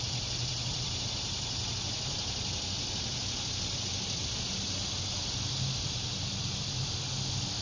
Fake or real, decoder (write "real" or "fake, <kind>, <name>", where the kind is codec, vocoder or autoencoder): real